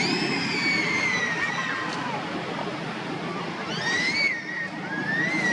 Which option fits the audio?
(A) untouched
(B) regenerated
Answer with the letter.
A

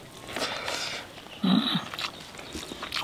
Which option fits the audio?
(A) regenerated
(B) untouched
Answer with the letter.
B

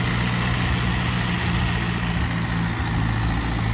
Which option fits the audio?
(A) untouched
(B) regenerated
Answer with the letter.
A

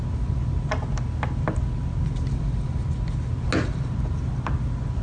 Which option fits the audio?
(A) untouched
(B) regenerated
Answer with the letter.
A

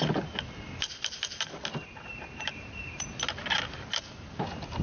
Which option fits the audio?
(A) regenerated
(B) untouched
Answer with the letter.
B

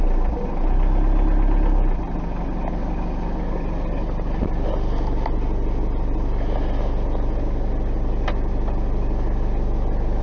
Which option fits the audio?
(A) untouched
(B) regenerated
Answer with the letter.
A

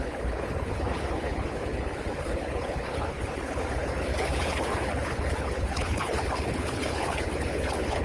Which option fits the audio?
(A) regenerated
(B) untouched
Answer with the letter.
A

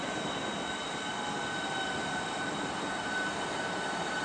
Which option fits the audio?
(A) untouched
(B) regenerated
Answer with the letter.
A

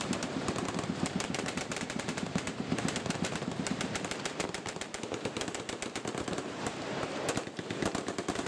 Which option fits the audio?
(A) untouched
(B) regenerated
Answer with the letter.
B